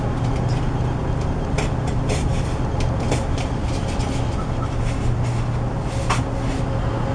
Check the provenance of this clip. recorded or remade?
recorded